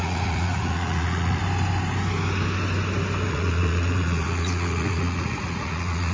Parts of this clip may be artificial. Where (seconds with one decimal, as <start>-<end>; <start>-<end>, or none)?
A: 0.0-1.4; 3.3-6.1